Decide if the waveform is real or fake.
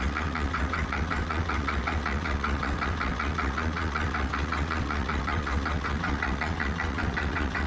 fake